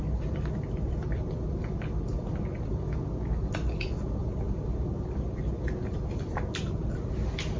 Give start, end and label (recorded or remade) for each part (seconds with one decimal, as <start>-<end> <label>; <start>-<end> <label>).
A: 0.0-7.6 recorded